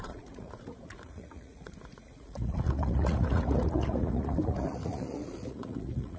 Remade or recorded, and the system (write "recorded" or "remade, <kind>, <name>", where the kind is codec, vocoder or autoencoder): remade, vocoder, Vocos